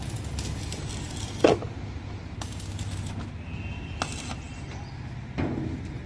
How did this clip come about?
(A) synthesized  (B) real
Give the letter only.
B